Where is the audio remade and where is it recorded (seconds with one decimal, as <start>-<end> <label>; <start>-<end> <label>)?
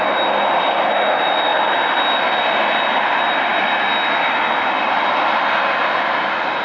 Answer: 0.0-6.6 recorded